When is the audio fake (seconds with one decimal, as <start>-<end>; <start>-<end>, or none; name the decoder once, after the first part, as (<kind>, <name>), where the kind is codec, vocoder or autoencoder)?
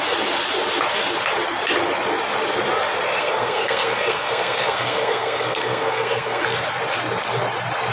3.2-6.4 (codec, SNAC)